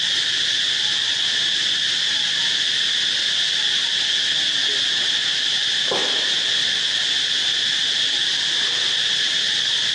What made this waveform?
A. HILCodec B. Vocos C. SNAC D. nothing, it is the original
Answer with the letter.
D